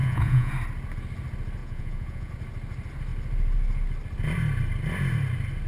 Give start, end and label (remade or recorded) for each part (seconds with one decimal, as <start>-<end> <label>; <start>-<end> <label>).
0.0-0.5 remade; 0.5-1.6 recorded; 1.6-2.3 remade; 2.3-5.7 recorded

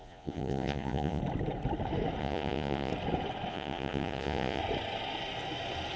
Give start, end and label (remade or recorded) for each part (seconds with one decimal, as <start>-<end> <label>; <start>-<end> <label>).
0.0-1.2 remade; 1.2-2.2 recorded; 2.2-2.9 remade; 2.9-3.5 recorded; 3.5-4.6 remade; 4.6-6.0 recorded

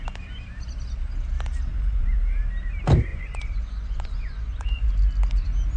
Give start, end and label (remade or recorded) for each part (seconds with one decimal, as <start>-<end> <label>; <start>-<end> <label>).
0.0-1.7 recorded; 1.7-2.2 remade; 2.2-3.1 recorded; 3.1-4.9 remade; 4.9-5.8 recorded

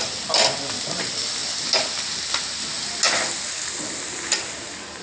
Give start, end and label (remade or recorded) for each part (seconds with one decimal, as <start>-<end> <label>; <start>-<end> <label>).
0.0-5.0 recorded

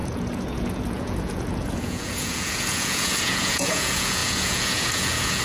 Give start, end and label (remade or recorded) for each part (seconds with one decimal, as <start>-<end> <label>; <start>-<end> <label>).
0.0-5.4 remade

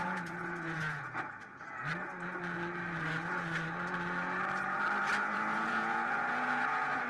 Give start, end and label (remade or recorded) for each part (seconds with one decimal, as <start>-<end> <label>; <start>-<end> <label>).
0.0-1.9 remade; 1.9-5.2 recorded; 5.2-7.1 remade